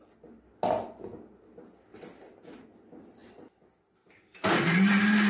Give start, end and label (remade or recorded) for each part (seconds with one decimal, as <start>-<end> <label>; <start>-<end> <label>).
0.0-5.3 recorded